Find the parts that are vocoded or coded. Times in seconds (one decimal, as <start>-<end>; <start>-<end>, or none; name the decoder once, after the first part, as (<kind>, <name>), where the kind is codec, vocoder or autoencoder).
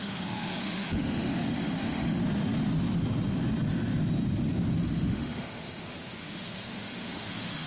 0.0-2.2 (autoencoder, DAC-VAE); 4.8-7.7